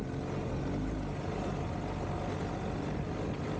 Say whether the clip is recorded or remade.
recorded